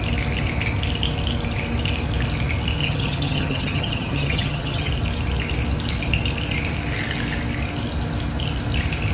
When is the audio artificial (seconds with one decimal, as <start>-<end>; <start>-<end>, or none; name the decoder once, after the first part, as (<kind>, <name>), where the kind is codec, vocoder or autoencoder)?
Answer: 2.8-4.9 (vocoder, HiFi-GAN)